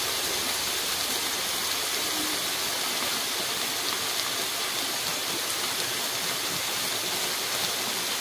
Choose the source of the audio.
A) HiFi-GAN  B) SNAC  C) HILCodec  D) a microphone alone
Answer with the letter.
D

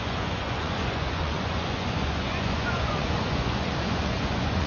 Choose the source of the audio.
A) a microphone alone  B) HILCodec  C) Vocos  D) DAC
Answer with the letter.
C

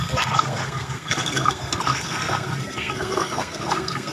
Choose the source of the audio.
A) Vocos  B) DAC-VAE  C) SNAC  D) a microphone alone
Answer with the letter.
C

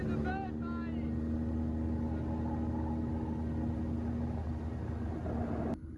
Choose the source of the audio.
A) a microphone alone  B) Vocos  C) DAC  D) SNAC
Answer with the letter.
A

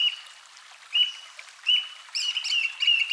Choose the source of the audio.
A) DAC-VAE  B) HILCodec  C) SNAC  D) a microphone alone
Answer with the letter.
D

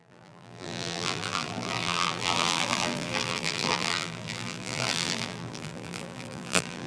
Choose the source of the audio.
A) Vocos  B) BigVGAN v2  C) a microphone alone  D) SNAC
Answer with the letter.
B